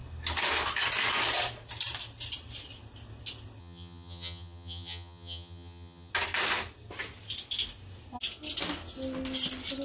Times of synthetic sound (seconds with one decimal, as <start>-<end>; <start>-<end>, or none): 3.6-6.1